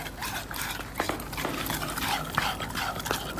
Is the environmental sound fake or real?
real